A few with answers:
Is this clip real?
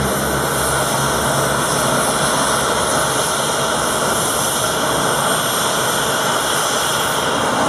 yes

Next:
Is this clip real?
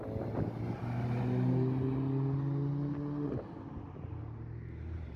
yes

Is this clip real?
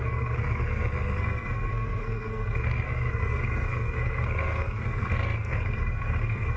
no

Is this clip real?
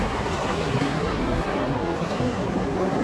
no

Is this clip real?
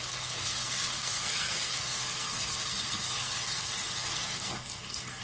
no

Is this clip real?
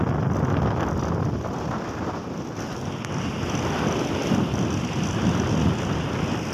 yes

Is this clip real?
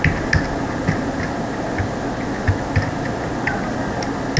yes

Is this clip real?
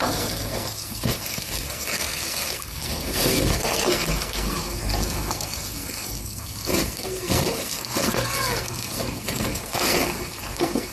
no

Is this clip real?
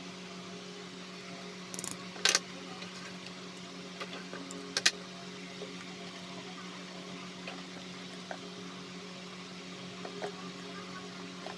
yes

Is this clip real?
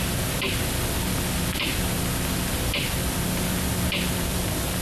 yes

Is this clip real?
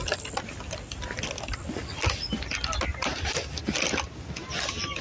yes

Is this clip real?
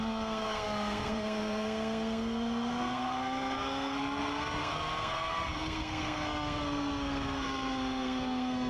no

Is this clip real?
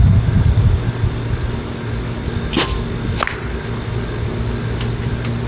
yes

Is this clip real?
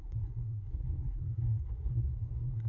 no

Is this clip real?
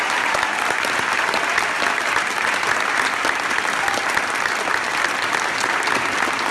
yes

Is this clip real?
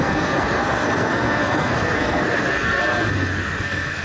no